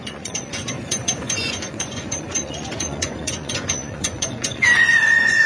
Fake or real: fake